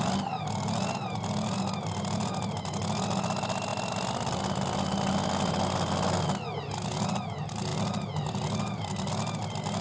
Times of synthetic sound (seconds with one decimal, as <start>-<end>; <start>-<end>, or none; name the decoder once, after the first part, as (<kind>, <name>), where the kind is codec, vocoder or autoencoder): none